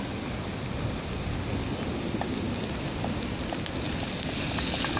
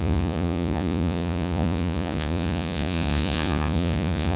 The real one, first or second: first